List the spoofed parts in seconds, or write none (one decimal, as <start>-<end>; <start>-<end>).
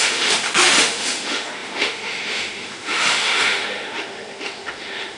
0.0-5.2